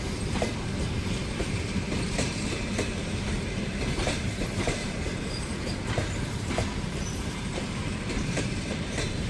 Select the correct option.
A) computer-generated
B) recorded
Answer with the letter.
A